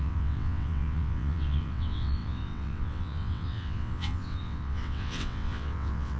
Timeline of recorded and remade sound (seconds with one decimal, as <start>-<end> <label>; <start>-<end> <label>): 0.0-6.2 remade